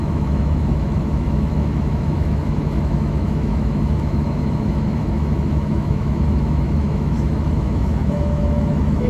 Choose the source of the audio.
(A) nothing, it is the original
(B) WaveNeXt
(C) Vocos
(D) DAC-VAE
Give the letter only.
D